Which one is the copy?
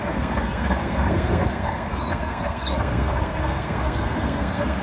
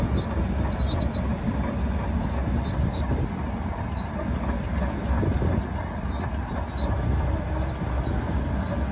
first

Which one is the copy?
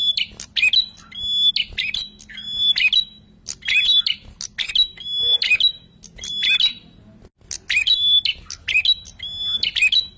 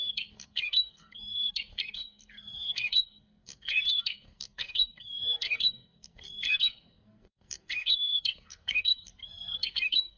second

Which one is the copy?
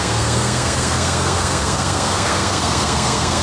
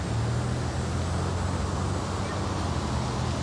first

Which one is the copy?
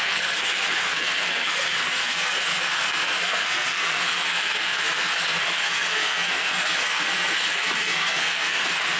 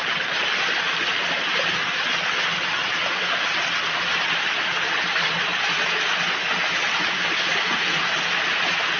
first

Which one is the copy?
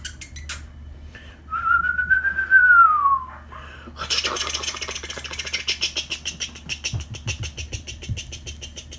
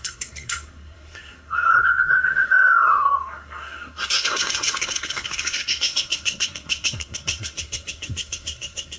second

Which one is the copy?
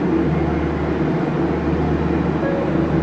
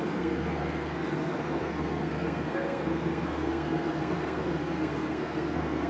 second